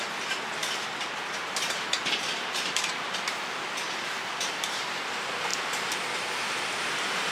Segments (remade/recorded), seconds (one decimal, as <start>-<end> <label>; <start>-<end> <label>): 0.0-0.6 recorded; 0.6-5.0 remade; 5.0-7.3 recorded